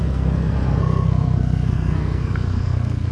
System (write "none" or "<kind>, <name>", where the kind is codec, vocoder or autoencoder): codec, SNAC